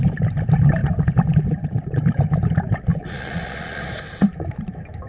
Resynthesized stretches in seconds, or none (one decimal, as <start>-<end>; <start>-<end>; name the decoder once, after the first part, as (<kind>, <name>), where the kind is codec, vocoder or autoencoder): 2.9-3.9 (vocoder, Vocos)